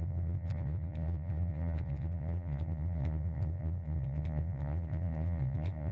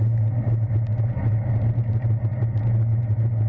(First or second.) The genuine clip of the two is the second